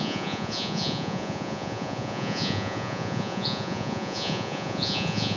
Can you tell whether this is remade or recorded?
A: remade